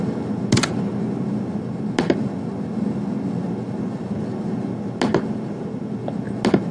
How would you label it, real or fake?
real